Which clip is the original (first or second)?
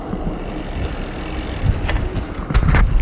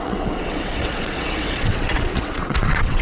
first